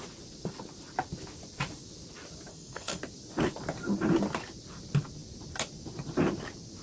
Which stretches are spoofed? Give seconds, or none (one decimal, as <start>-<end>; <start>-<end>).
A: 2.5-3.0